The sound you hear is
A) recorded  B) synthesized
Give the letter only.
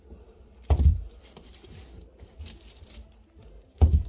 B